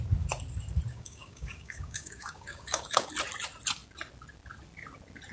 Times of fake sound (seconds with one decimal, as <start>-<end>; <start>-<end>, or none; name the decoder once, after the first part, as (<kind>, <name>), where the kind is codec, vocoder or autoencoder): 0.9-3.1 (codec, DAC)